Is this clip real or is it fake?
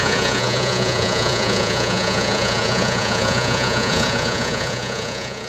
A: fake